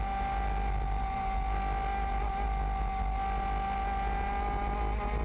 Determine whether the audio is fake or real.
real